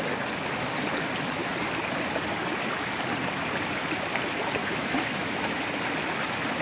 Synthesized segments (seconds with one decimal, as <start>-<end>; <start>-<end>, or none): 4.6-5.6